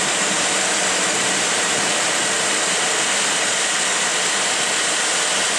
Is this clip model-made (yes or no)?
no